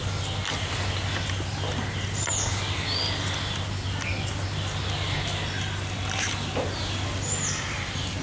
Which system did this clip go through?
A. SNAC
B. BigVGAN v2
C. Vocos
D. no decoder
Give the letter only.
D